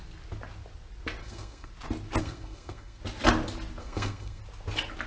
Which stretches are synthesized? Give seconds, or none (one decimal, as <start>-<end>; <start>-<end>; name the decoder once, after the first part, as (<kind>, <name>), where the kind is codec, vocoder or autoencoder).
1.2-1.7 (codec, SNAC); 2.2-3.0; 3.8-4.4